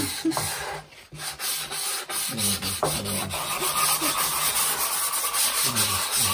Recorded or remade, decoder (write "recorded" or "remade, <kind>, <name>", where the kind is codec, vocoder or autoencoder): recorded